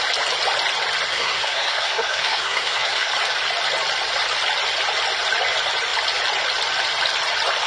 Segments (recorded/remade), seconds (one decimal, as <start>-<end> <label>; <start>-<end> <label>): 0.0-1.1 recorded; 1.1-3.1 remade; 3.1-7.7 recorded